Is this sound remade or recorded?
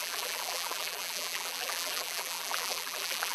remade